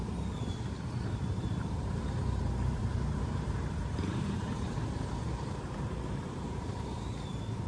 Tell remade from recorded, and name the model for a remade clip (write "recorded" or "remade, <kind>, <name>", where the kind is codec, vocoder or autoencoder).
remade, vocoder, BigVGAN v2